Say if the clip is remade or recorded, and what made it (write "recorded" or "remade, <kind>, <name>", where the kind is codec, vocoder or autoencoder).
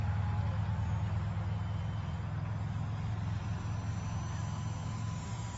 recorded